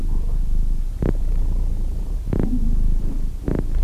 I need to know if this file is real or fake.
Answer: fake